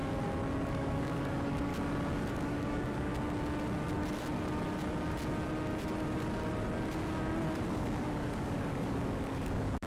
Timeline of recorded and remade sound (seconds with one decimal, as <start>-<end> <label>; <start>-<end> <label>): 0.0-0.7 recorded; 0.7-1.7 remade; 1.7-2.3 recorded; 2.3-3.1 remade; 3.1-7.7 recorded; 7.7-9.9 remade